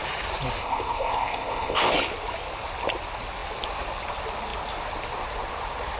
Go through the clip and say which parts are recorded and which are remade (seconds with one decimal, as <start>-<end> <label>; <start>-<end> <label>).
0.0-0.6 recorded; 0.6-1.9 remade; 1.9-6.0 recorded